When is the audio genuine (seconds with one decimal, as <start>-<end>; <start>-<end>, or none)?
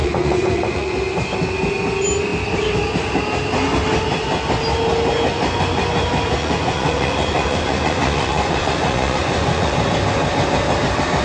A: 0.9-6.4; 9.8-11.2